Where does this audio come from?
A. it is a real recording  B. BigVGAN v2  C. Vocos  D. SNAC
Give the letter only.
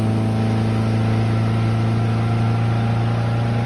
A